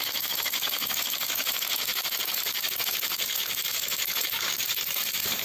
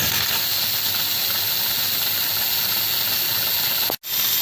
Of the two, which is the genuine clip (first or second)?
second